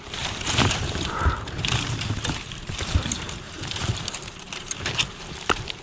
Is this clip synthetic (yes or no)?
yes